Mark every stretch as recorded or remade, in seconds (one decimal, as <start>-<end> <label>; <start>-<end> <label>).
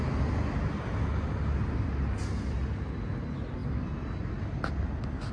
0.0-5.3 recorded